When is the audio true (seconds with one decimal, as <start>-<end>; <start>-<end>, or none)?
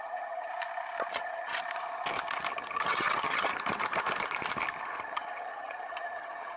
0.5-1.1; 1.5-2.5; 3.5-5.0